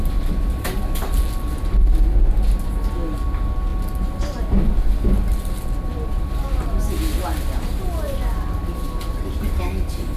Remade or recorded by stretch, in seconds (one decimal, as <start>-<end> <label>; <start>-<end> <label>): 0.0-10.2 recorded